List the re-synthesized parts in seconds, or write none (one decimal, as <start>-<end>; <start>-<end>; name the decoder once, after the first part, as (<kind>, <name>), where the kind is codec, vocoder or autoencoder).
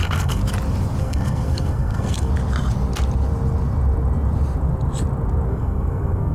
0.0-0.4 (codec, SNAC); 1.0-2.3; 5.5-6.3